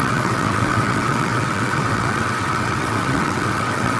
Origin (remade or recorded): remade